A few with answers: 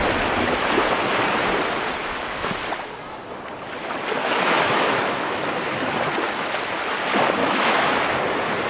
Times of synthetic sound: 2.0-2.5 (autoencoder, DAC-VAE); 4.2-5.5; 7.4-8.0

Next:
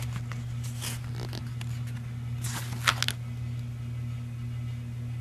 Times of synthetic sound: none